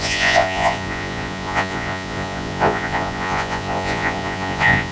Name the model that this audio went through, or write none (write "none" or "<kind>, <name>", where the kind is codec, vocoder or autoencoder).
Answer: vocoder, Vocos